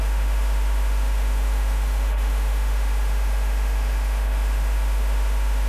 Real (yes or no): no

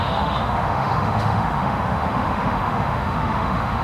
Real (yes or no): no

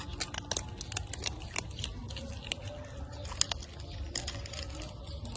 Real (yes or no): yes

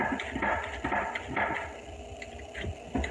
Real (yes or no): yes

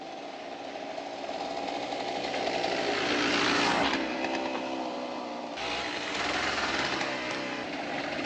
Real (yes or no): yes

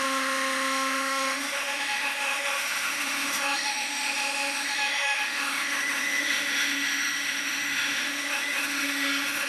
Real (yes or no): no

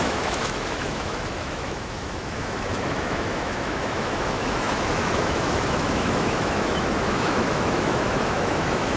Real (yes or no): no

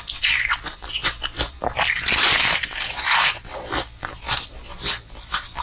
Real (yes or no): yes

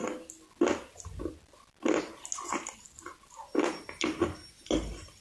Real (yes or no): yes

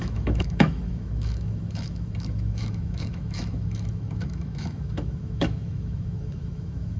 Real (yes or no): no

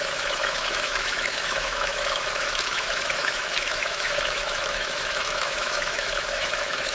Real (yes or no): no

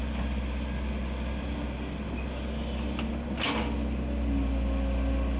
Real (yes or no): yes